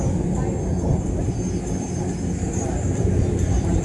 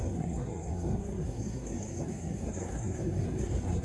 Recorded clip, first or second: first